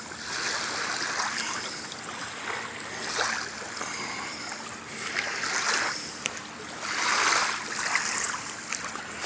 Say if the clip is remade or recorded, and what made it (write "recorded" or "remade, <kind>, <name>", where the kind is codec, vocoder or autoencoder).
recorded